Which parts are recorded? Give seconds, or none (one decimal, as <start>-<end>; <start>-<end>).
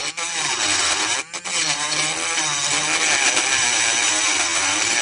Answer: 0.0-5.0